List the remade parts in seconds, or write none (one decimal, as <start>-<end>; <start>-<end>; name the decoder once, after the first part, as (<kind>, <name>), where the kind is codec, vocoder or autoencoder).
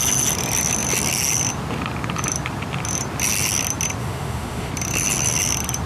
4.0-4.7 (autoencoder, DAC-VAE)